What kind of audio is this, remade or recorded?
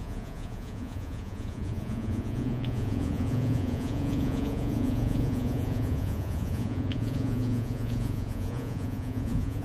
remade